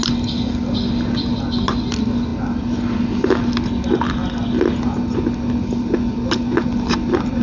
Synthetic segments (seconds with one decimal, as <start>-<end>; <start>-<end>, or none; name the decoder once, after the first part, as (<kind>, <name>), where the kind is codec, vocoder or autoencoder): none